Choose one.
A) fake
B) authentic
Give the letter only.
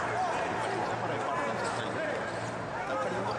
B